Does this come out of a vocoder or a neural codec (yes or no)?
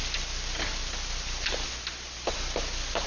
no